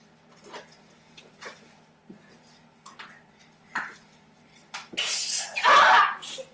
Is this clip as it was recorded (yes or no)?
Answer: yes